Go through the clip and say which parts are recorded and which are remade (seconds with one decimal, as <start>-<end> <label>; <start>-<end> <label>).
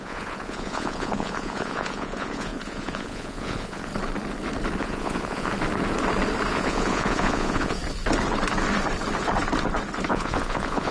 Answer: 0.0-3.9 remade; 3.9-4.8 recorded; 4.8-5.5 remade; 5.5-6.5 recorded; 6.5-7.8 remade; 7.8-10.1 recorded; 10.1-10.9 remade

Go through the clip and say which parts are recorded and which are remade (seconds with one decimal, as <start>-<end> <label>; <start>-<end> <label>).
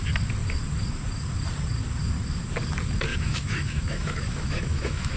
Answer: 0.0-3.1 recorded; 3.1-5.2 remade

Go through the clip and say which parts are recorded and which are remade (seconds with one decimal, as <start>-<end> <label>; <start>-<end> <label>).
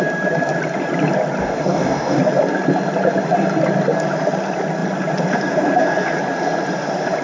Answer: 0.0-1.4 recorded; 1.4-2.2 remade; 2.2-7.2 recorded